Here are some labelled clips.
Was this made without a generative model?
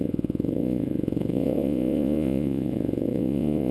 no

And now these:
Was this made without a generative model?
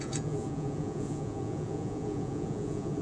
no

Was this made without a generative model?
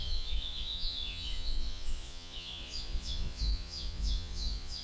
no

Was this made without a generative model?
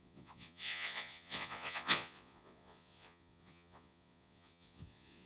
no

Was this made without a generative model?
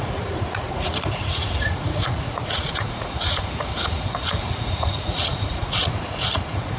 no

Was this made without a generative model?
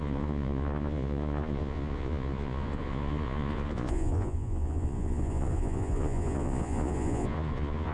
no